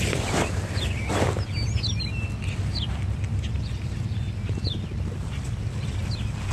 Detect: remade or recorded recorded